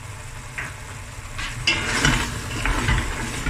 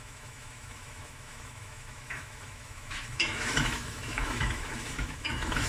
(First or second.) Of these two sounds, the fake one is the second